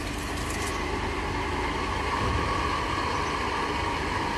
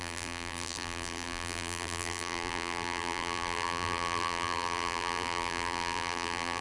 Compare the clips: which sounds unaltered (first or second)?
first